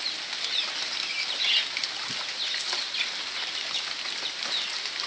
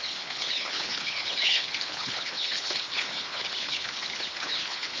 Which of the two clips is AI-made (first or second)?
second